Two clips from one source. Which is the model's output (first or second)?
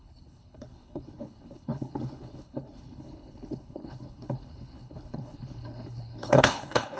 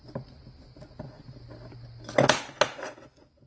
first